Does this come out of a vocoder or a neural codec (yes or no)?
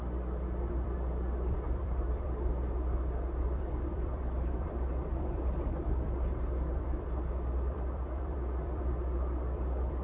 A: yes